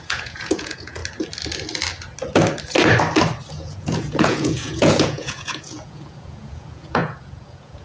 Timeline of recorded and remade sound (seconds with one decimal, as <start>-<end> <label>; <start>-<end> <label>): 0.0-1.0 remade; 1.0-3.5 recorded; 3.5-7.8 remade